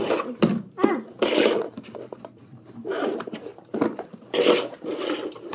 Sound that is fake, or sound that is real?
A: fake